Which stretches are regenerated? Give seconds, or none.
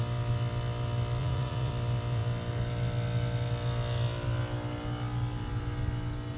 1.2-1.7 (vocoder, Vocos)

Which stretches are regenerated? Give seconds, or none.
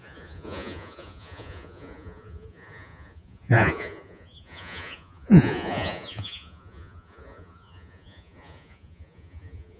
0.0-9.8 (vocoder, Vocos)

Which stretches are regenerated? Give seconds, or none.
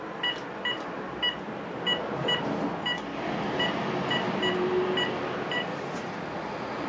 5.7-6.9 (vocoder, Vocos)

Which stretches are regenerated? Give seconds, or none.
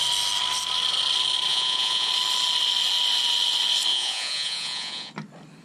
1.5-2.1 (vocoder, Vocos); 3.9-5.1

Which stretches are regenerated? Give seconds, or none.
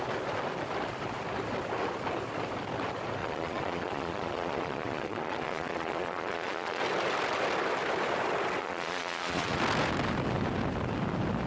3.2-6.8 (vocoder, Vocos); 8.6-9.6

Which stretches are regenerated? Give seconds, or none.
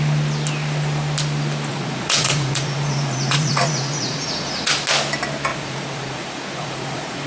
1.7-4.7 (vocoder, Vocos); 5.5-7.3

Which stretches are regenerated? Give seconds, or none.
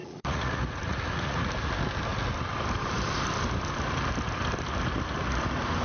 0.0-1.5 (vocoder, Vocos)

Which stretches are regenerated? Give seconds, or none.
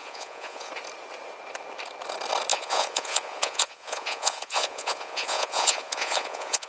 0.0-0.7 (vocoder, Vocos); 2.5-6.7